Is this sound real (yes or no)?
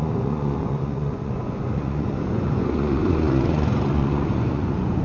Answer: no